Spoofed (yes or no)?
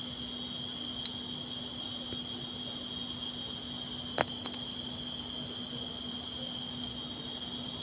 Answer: no